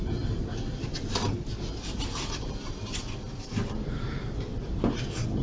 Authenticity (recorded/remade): recorded